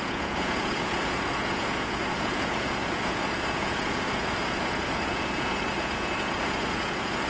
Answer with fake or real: fake